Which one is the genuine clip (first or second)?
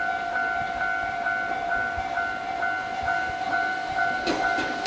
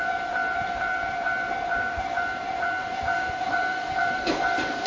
first